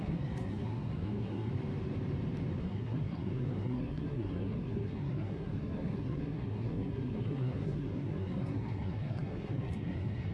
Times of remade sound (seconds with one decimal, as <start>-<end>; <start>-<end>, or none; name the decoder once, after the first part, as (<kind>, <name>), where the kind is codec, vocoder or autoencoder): 0.0-1.5 (codec, SNAC); 2.6-10.3